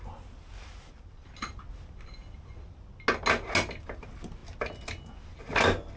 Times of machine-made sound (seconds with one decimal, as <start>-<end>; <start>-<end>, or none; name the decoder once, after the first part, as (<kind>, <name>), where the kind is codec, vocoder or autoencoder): none